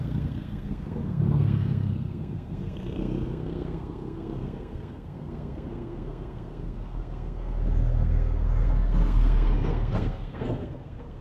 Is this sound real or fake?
fake